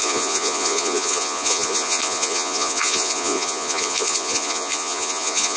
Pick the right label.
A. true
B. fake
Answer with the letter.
B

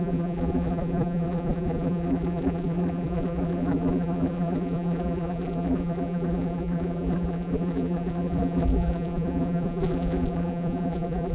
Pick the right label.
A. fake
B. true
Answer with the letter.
A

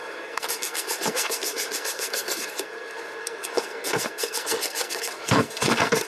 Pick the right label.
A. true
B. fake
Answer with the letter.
B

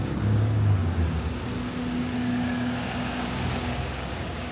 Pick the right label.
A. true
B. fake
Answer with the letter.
B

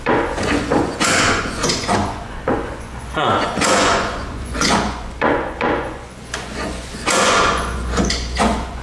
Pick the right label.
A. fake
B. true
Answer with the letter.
A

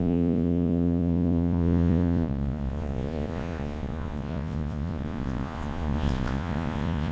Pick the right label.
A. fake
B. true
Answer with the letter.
A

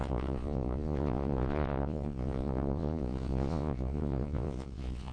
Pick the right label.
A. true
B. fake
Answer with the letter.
B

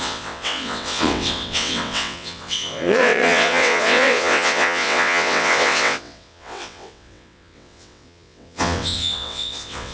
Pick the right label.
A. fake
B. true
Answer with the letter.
A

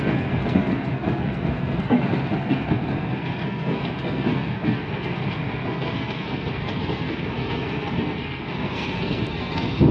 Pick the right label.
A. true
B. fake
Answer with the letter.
B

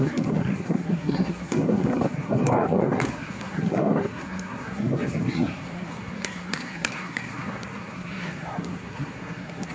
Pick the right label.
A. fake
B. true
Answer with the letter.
A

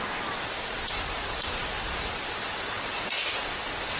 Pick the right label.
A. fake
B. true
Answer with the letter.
A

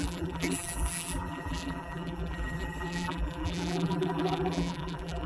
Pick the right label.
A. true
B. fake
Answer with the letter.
B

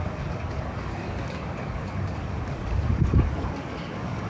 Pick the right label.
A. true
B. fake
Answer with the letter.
B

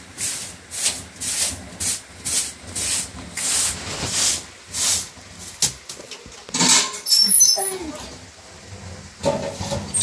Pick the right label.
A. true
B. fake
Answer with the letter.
A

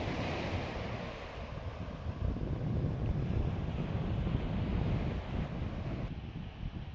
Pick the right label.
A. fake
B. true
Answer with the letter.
B